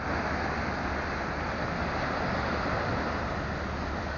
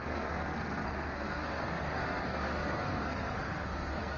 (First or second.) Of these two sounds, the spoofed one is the second